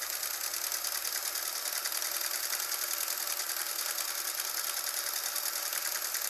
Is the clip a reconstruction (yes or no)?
no